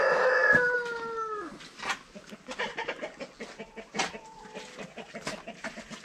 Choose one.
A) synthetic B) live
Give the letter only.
B